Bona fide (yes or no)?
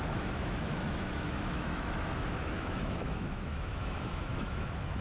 no